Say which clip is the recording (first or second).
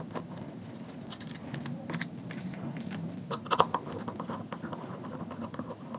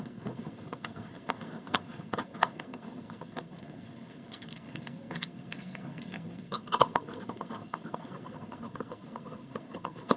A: first